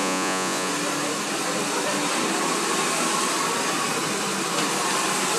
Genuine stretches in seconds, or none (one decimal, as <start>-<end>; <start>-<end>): 0.7-5.4